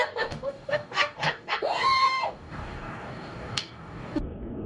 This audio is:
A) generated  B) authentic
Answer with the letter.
A